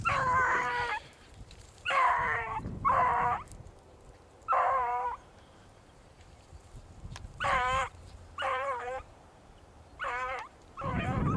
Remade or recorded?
remade